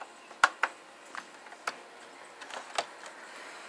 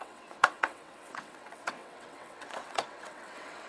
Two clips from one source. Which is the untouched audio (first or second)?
first